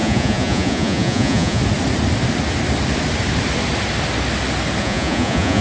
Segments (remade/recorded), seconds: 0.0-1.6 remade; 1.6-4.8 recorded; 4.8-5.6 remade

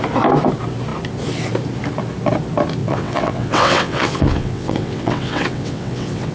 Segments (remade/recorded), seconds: 0.0-2.8 recorded; 2.8-6.3 remade

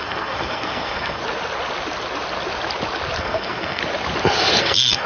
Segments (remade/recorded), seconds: 0.0-1.2 remade; 1.2-3.2 recorded; 3.2-3.8 remade; 3.8-4.6 recorded; 4.6-5.1 remade

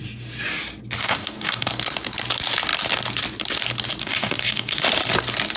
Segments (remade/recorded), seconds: 0.0-1.0 recorded; 1.0-1.7 remade; 1.7-4.0 recorded; 4.0-4.8 remade; 4.8-5.6 recorded